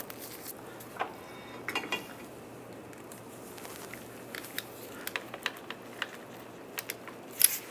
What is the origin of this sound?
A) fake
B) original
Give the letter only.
B